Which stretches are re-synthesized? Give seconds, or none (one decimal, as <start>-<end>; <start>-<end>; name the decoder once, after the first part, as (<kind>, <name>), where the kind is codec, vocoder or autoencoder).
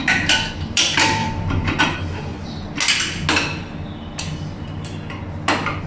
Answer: 0.0-2.3 (vocoder, BigVGAN v2)